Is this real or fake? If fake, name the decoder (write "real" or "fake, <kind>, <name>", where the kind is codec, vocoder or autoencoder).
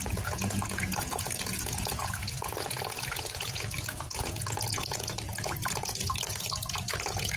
fake, vocoder, Vocos